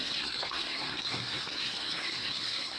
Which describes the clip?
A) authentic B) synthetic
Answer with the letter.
B